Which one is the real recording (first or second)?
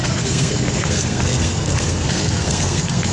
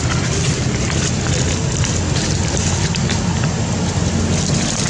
second